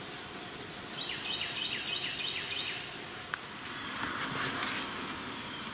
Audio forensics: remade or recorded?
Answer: recorded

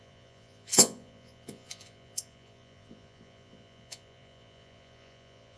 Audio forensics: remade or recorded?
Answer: remade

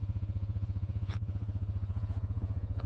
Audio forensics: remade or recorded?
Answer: remade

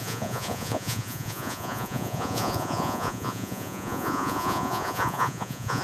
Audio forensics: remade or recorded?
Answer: remade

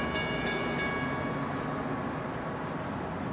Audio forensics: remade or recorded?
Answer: recorded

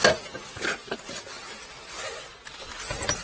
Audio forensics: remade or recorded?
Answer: recorded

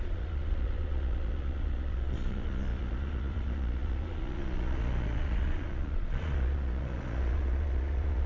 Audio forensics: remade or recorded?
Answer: remade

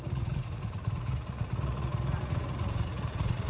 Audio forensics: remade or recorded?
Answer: remade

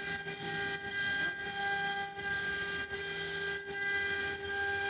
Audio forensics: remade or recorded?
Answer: recorded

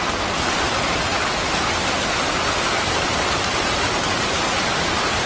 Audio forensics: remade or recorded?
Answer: recorded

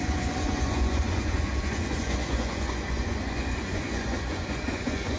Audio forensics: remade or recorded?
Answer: remade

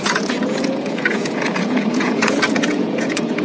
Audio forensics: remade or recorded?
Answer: remade